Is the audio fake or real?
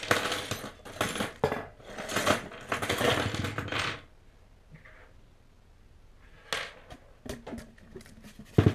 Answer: real